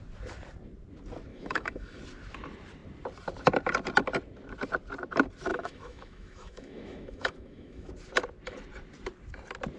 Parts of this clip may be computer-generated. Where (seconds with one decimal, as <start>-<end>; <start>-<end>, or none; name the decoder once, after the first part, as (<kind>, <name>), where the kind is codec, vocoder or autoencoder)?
1.3-2.0 (autoencoder, DAC-VAE); 5.5-7.9